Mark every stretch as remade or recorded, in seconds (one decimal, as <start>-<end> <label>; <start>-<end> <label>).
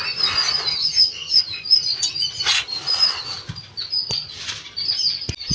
0.0-0.7 recorded; 0.7-1.4 remade; 1.4-5.5 recorded